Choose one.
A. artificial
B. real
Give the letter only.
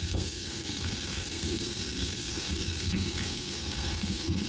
A